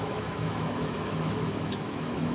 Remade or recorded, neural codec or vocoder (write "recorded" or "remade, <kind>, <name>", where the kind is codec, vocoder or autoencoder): remade, autoencoder, DAC-VAE